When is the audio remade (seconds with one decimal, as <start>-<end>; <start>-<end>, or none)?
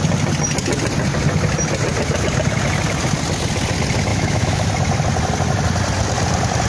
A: 4.1-4.7